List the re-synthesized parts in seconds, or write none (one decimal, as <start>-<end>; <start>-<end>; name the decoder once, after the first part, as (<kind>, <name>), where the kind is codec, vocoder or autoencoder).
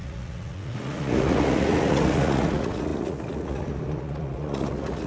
0.0-5.1 (vocoder, Vocos)